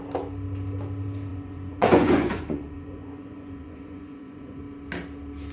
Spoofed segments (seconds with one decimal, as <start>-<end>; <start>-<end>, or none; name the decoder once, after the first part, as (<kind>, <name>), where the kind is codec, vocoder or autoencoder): 1.3-4.6 (vocoder, Vocos)